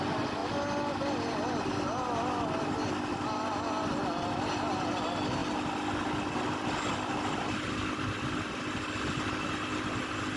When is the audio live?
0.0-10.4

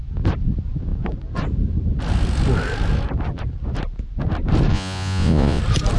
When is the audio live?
0.0-4.7; 5.6-6.0

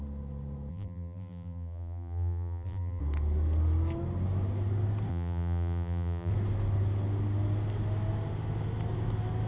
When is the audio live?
0.0-0.7; 3.0-5.1; 6.3-9.5

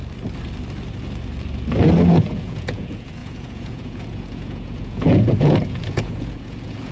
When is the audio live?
0.0-2.1